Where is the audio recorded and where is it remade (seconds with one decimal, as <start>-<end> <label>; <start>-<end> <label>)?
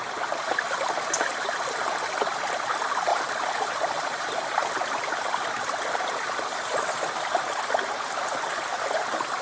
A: 0.0-9.4 recorded